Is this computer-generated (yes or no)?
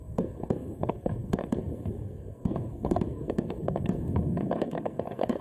yes